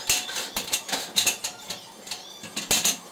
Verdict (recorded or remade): recorded